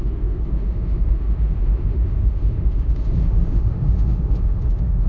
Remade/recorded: remade